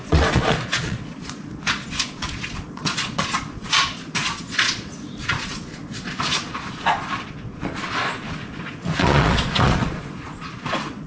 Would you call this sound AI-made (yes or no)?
yes